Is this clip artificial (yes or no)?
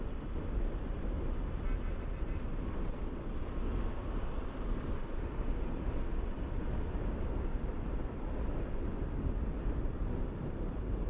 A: no